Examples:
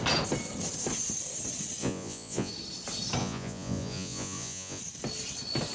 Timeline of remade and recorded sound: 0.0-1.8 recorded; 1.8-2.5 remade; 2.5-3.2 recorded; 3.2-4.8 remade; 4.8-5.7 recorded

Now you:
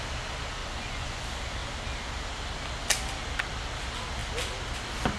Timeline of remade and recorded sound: 0.0-0.6 recorded; 0.6-1.2 remade; 1.2-5.2 recorded

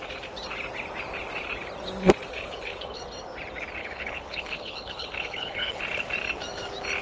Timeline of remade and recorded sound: 0.0-2.3 recorded; 2.3-3.0 remade; 3.0-3.8 recorded; 3.8-5.8 remade; 5.8-7.0 recorded